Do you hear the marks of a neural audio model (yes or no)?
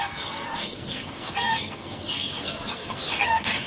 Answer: yes